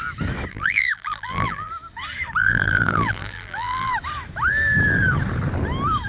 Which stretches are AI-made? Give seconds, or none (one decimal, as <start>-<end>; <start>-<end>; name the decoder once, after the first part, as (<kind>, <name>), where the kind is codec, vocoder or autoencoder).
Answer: 0.5-1.7 (vocoder, BigVGAN v2); 2.4-3.9